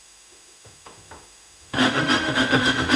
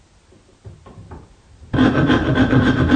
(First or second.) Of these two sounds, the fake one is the first